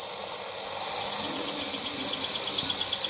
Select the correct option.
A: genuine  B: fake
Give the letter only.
A